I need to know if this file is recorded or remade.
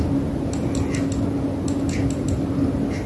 recorded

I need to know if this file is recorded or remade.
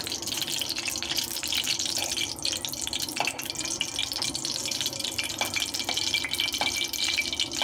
recorded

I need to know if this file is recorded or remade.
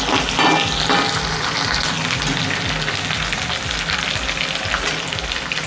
recorded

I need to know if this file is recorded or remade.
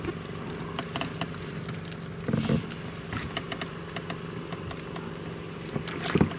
recorded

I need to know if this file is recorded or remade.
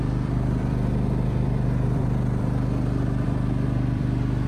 remade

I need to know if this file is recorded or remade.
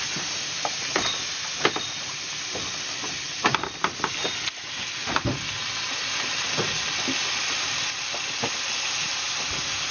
recorded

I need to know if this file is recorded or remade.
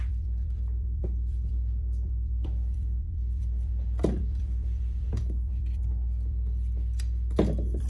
remade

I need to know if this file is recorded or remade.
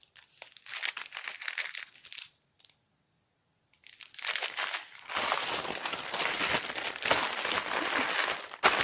recorded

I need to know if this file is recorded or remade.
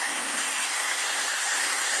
remade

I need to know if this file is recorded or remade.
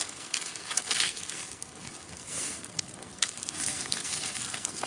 remade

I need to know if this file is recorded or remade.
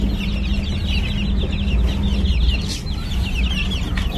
recorded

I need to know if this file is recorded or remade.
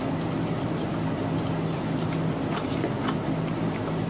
recorded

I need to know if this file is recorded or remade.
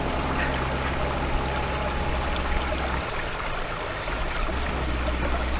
recorded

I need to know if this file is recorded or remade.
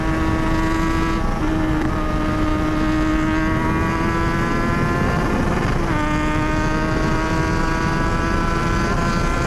recorded